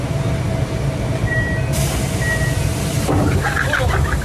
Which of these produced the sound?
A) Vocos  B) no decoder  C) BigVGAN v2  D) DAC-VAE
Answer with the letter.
B